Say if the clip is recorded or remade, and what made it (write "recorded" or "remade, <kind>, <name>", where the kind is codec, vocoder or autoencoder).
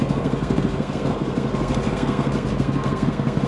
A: remade, codec, SNAC